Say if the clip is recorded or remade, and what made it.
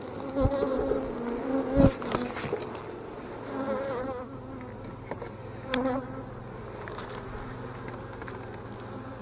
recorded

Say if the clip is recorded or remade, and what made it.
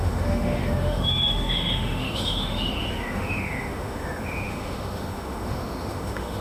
remade, autoencoder, DAC-VAE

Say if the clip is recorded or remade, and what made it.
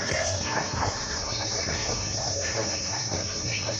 remade, codec, SNAC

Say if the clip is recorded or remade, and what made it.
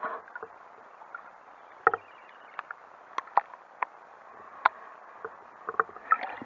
recorded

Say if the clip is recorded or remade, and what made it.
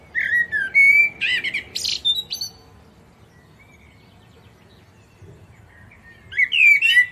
recorded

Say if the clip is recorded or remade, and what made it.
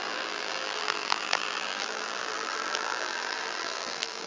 remade, vocoder, BigVGAN v2